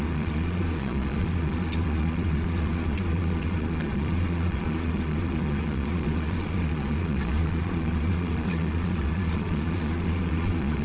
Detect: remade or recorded remade